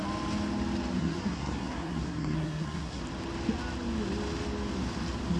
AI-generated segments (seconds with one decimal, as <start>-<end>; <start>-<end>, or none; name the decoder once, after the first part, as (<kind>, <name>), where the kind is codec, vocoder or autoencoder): 1.0-3.0 (codec, SNAC)